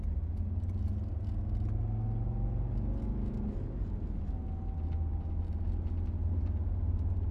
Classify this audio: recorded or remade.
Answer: recorded